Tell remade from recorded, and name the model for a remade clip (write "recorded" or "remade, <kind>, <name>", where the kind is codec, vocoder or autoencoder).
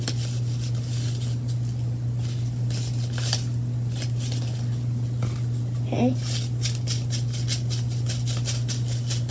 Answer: recorded